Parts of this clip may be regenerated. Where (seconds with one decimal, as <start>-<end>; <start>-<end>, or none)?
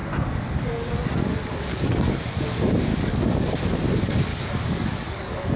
0.0-0.9; 1.7-2.3; 2.9-3.5; 4.3-5.6